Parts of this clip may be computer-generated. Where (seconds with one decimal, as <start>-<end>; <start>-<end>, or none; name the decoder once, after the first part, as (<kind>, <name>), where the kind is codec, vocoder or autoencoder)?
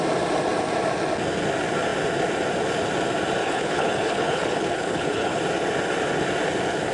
3.4-5.4 (codec, HILCodec)